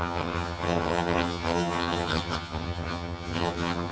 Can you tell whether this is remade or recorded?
remade